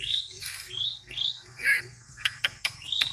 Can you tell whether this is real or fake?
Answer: fake